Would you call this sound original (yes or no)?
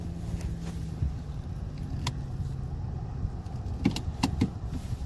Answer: yes